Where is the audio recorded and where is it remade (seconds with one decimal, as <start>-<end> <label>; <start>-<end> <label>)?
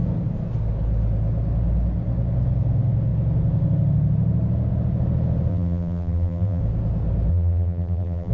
0.0-5.5 recorded; 5.5-6.6 remade; 6.6-7.3 recorded; 7.3-8.3 remade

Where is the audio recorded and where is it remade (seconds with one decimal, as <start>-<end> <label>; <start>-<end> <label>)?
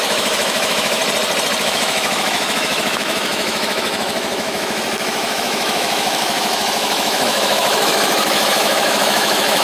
0.0-1.0 remade; 1.0-1.6 recorded; 1.6-9.6 remade